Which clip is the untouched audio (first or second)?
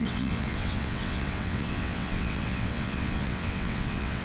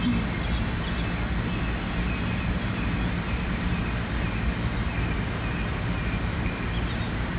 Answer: second